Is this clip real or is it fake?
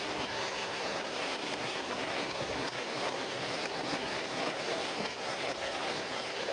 fake